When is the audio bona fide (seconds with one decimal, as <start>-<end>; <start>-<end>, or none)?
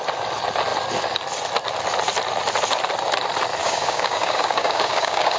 0.0-3.6